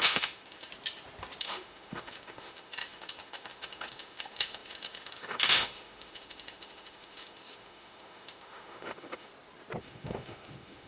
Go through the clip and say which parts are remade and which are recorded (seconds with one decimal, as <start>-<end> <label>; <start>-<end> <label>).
0.0-0.7 remade; 0.7-1.4 recorded; 1.4-9.3 remade; 9.3-9.8 recorded; 9.8-10.9 remade